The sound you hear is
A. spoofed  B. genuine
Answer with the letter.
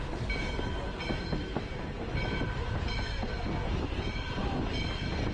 B